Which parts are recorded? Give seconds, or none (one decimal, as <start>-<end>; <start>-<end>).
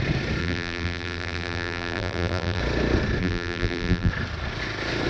0.0-0.4; 2.6-3.2; 4.1-5.1